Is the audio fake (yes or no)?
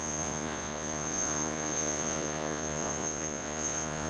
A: yes